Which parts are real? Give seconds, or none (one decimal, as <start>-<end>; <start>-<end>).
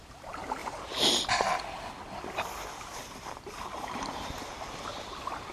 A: 0.0-0.6; 1.6-3.7; 4.8-5.5